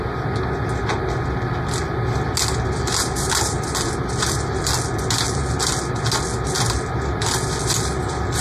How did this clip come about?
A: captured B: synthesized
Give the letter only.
A